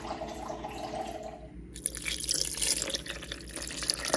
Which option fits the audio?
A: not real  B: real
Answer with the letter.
B